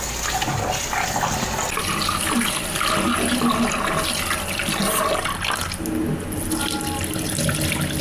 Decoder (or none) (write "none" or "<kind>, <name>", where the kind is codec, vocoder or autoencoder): none